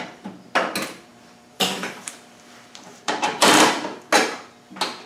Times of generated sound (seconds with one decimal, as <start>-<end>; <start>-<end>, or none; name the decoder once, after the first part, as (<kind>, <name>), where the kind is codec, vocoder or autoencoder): 1.1-4.0 (vocoder, BigVGAN v2)